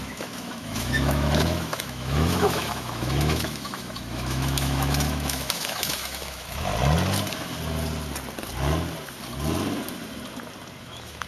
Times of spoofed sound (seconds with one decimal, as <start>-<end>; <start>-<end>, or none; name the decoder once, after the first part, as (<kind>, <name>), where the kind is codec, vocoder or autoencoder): 0.0-6.7 (autoencoder, DAC-VAE); 10.8-11.3